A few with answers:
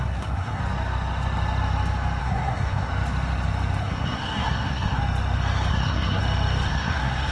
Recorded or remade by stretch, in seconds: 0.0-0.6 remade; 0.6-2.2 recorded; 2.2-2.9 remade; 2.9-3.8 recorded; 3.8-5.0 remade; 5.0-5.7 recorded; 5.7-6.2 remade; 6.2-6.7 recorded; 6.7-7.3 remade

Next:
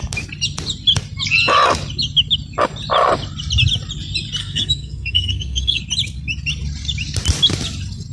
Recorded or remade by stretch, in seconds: 0.0-4.4 recorded; 4.4-5.8 remade; 5.8-8.1 recorded

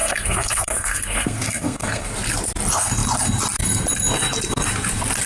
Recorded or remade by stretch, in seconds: 0.0-2.1 remade; 2.1-5.3 recorded

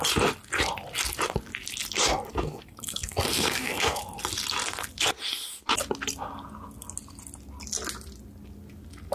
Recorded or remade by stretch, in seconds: 0.0-2.3 recorded; 2.3-4.0 remade; 4.0-9.1 recorded

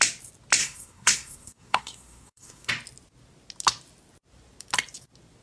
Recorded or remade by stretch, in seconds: 0.0-0.6 recorded; 0.6-2.7 remade; 2.7-5.4 recorded

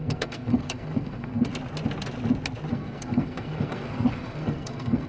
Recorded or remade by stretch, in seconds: 0.0-1.5 remade; 1.5-2.7 recorded; 2.7-5.1 remade

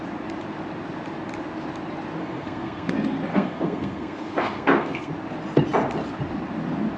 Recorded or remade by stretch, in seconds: 0.0-2.2 recorded; 2.2-2.9 remade; 2.9-3.3 recorded; 3.3-5.1 remade; 5.1-7.0 recorded